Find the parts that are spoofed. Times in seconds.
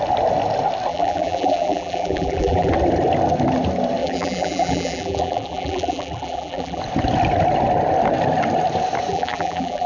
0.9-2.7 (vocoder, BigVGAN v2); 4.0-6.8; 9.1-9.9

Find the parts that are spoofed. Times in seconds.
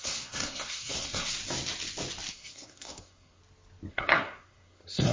0.0-1.4 (codec, SNAC); 2.3-3.4; 3.9-5.1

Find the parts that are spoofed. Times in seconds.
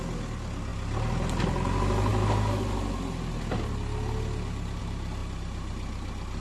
none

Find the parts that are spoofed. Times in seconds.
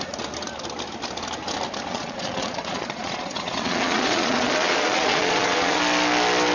1.9-5.8 (vocoder, Vocos)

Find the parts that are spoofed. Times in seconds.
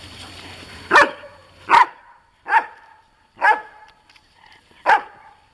none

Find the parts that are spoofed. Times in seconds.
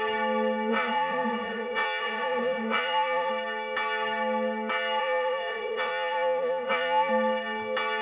0.7-3.3 (vocoder, Vocos); 5.0-7.1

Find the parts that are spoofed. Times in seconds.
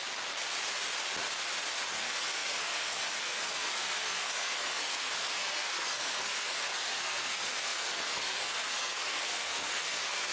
2.0-10.3 (codec, SNAC)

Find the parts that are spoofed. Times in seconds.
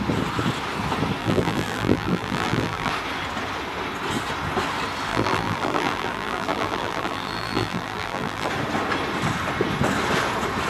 1.2-2.9 (vocoder, BigVGAN v2); 5.1-8.5